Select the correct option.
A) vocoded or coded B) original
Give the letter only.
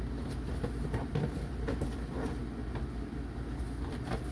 B